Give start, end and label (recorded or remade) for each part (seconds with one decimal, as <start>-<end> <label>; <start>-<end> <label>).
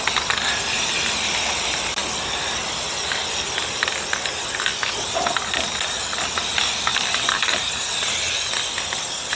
0.0-9.4 recorded